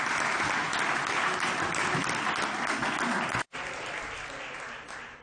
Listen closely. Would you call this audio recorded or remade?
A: recorded